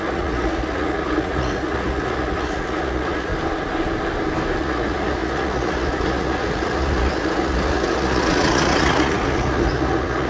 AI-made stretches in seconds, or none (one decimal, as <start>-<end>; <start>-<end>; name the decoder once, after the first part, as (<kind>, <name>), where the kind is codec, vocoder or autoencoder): 0.0-3.3 (vocoder, Vocos); 4.6-10.3